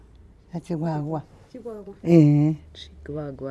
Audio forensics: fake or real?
fake